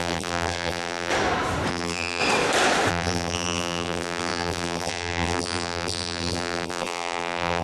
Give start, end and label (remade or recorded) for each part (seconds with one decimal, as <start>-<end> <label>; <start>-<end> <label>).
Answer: 0.0-1.1 remade; 1.1-1.7 recorded; 1.7-2.2 remade; 2.2-2.9 recorded; 2.9-7.6 remade